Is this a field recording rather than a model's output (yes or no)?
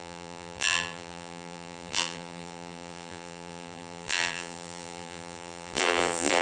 no